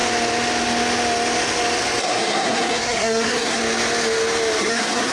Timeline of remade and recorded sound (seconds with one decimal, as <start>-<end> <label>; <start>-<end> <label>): 0.0-2.0 recorded; 2.0-3.6 remade; 3.6-4.6 recorded; 4.6-5.1 remade